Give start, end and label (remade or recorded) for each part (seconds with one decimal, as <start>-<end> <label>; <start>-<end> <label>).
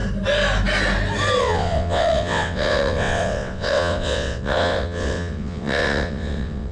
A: 0.0-1.4 recorded; 1.4-6.7 remade